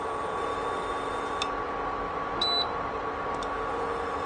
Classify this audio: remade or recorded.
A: recorded